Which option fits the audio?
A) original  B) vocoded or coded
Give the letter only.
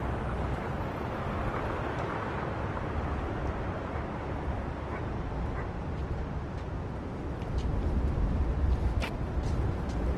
A